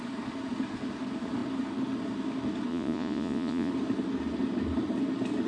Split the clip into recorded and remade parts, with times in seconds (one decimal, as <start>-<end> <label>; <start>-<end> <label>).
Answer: 0.0-2.7 recorded; 2.7-3.7 remade; 3.7-5.5 recorded